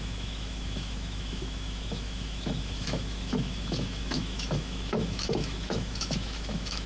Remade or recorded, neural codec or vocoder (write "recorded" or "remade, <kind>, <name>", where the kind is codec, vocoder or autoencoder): remade, autoencoder, DAC-VAE